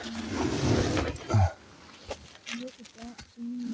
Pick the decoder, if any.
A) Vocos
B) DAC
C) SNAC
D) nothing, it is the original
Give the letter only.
D